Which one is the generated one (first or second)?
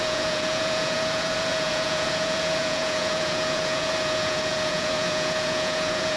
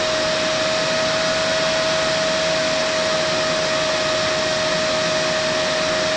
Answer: first